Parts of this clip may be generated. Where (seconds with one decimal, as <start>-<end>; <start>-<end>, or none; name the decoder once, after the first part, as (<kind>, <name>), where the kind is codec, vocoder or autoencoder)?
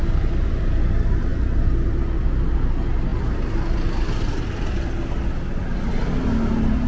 none